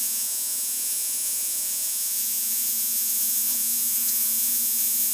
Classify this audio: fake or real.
fake